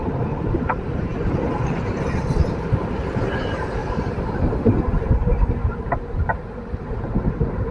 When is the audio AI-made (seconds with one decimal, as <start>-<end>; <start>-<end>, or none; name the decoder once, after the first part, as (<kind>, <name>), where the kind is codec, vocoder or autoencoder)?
3.8-4.4 (vocoder, BigVGAN v2)